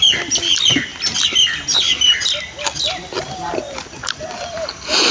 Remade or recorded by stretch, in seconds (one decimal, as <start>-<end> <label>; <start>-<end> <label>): 0.0-5.1 recorded